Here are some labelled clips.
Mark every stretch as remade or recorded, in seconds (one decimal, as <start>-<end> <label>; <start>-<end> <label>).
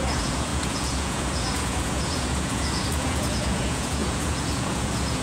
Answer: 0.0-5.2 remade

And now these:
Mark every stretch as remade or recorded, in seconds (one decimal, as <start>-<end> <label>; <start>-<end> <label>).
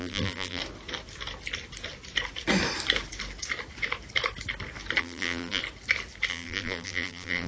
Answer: 0.0-0.6 remade; 0.6-5.0 recorded; 5.0-5.6 remade; 5.6-6.3 recorded; 6.3-7.5 remade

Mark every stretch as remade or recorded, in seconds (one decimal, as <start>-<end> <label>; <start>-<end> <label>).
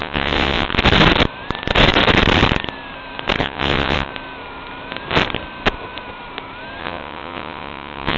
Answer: 0.0-0.7 remade; 0.7-3.4 recorded; 3.4-4.1 remade; 4.1-6.8 recorded; 6.8-8.2 remade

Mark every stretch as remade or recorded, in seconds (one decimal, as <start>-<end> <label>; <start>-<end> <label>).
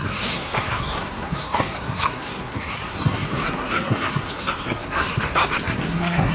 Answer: 0.0-6.3 remade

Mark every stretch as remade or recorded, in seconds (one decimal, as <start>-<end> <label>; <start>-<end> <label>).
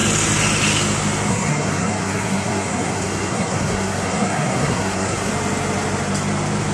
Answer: 0.0-1.3 recorded; 1.3-5.3 remade; 5.3-6.7 recorded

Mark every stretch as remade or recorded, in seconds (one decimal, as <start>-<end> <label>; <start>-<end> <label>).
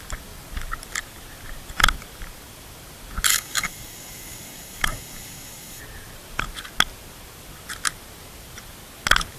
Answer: 0.0-3.3 recorded; 3.3-5.8 remade; 5.8-9.4 recorded